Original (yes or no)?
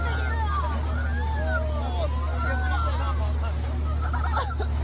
yes